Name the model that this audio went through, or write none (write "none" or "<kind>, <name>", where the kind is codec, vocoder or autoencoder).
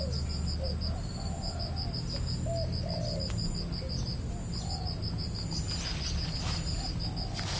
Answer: none